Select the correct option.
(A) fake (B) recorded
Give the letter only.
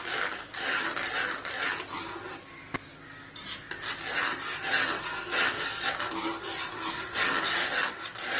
B